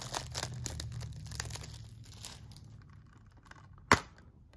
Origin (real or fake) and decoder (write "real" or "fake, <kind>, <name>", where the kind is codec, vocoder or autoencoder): real